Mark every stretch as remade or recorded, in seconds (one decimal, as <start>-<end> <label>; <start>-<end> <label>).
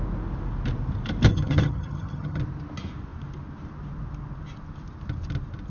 0.0-1.3 recorded; 1.3-2.4 remade; 2.4-5.7 recorded